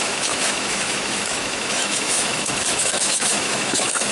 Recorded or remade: remade